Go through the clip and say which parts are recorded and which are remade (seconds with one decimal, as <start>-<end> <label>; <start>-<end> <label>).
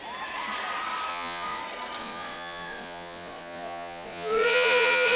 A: 0.0-1.1 recorded; 1.1-1.6 remade; 1.6-2.0 recorded; 2.0-5.2 remade